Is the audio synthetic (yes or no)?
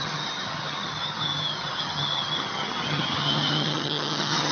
yes